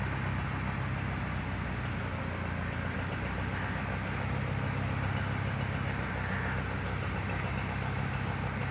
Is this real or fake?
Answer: real